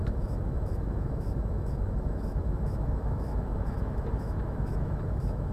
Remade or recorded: remade